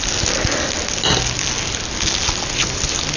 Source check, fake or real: real